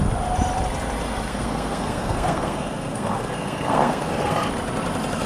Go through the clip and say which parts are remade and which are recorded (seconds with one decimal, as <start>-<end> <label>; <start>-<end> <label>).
0.0-1.3 recorded; 1.3-4.5 remade; 4.5-5.3 recorded